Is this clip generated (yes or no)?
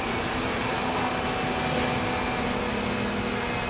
no